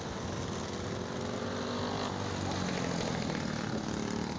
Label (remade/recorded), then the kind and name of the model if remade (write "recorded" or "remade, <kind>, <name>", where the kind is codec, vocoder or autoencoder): recorded